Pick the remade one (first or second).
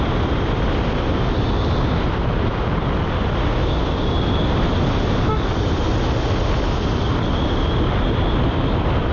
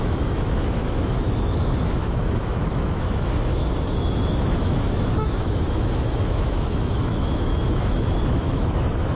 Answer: second